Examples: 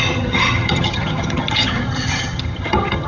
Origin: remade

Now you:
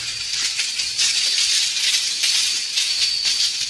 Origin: remade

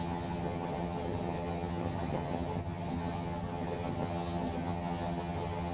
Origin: remade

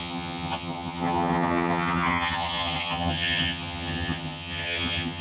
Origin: remade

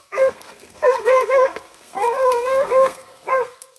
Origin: remade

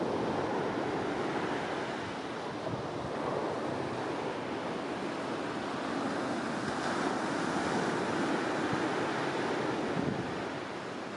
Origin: recorded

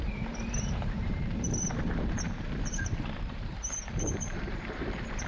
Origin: remade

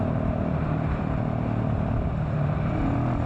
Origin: recorded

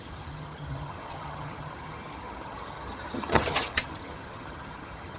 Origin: remade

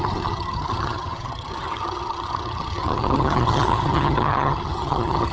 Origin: remade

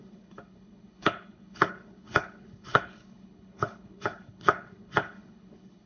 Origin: remade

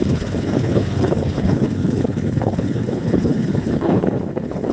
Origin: remade